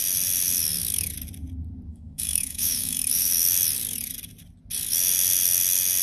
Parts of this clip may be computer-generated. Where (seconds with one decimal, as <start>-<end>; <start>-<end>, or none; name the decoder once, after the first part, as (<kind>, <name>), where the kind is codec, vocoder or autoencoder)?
1.9-3.3 (autoencoder, DAC-VAE)